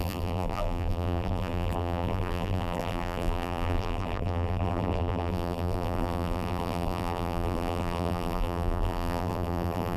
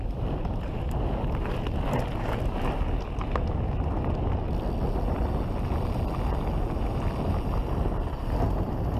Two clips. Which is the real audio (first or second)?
second